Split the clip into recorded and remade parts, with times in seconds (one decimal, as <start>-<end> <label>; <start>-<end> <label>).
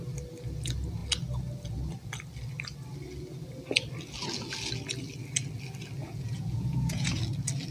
0.0-6.0 recorded; 6.0-7.2 remade; 7.2-7.7 recorded